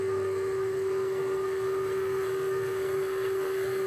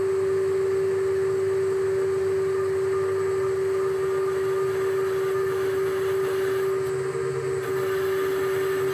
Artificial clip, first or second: first